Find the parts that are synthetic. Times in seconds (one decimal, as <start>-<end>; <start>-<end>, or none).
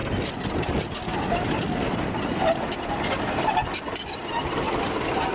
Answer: none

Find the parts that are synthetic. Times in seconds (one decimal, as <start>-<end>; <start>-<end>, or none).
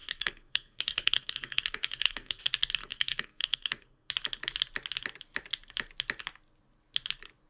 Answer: 0.0-2.4; 2.8-4.1